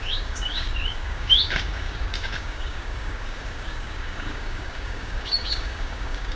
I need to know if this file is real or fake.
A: fake